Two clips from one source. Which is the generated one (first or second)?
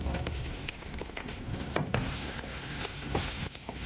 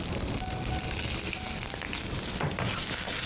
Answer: first